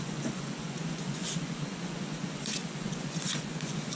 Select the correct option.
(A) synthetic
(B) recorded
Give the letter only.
A